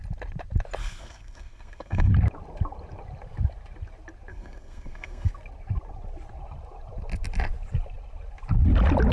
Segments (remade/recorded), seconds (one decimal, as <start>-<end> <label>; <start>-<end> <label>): 0.0-0.8 recorded; 0.8-2.1 remade; 2.1-4.3 recorded; 4.3-5.3 remade; 5.3-9.1 recorded